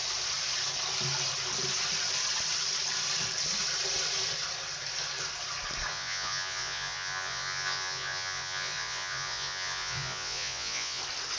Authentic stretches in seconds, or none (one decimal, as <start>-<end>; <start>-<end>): 0.0-5.9; 11.0-11.4